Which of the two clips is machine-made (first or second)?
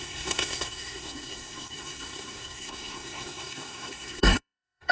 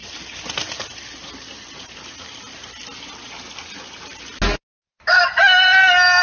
first